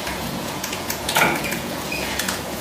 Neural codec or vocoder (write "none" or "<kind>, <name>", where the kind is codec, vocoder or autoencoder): vocoder, Vocos